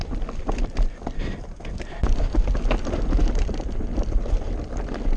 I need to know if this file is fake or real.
real